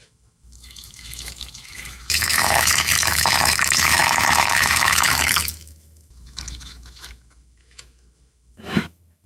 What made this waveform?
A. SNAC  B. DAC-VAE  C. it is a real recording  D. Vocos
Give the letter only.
B